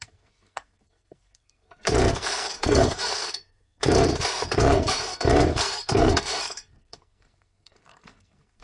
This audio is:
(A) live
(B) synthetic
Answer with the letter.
B